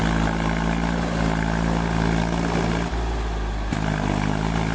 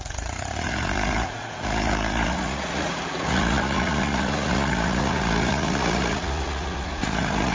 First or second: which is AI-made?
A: second